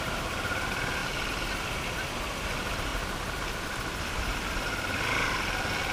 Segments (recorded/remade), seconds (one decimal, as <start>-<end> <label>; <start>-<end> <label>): 0.0-1.0 recorded; 1.0-1.5 remade; 1.5-2.9 recorded; 2.9-4.5 remade; 4.5-5.9 recorded